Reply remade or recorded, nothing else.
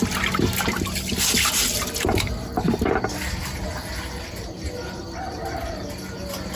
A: recorded